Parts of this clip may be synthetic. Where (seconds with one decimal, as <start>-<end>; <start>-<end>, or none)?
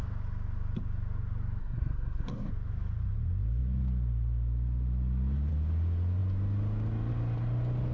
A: 1.6-2.5